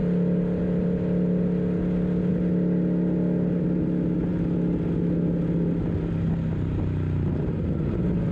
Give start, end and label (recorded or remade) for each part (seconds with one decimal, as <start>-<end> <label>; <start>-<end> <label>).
0.0-8.3 recorded